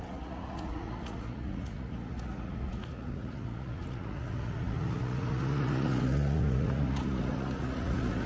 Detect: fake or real fake